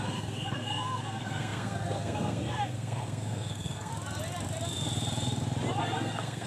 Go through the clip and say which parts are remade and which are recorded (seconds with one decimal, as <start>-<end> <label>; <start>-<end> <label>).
0.0-3.9 remade; 3.9-5.8 recorded; 5.8-6.5 remade